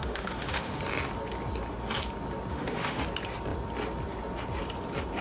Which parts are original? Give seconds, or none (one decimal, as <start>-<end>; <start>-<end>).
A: 0.8-2.5; 3.0-5.2